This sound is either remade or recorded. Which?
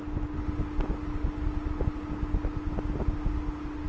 recorded